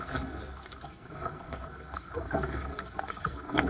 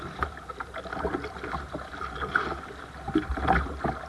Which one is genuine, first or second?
second